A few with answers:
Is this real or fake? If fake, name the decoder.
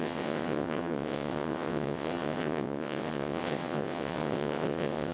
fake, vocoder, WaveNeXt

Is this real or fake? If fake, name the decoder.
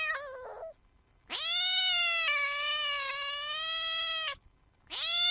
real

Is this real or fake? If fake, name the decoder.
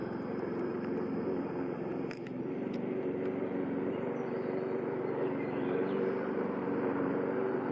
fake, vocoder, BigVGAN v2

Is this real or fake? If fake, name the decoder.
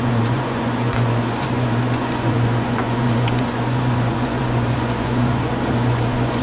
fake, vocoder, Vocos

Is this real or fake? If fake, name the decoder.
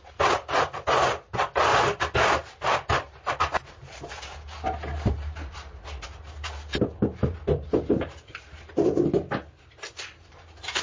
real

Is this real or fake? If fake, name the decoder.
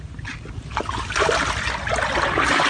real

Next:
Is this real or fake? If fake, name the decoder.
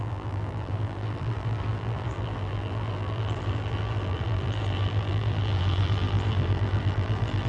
fake, vocoder, BigVGAN v2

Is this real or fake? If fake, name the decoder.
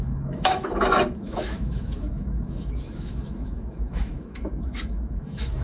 fake, autoencoder, DAC-VAE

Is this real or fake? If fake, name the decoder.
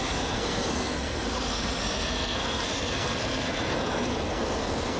fake, codec, SNAC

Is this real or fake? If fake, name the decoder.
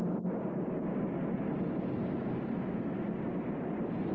real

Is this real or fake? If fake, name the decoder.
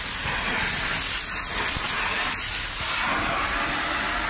real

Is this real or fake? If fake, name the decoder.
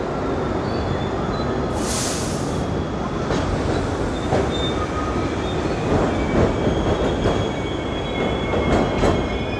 real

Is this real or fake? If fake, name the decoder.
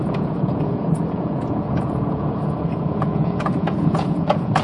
fake, vocoder, Vocos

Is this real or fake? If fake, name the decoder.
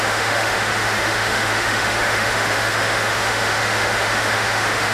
fake, autoencoder, DAC-VAE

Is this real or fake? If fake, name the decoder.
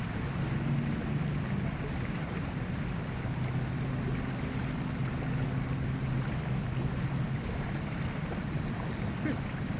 real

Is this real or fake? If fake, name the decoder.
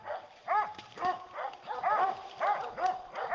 real